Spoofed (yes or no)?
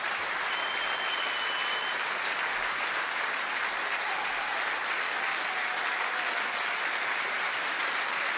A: no